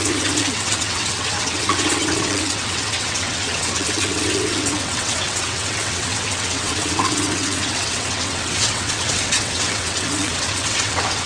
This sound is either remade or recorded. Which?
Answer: remade